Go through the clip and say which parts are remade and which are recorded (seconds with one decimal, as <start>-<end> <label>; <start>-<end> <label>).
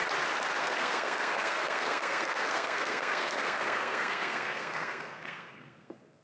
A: 0.0-0.6 recorded; 0.6-6.2 remade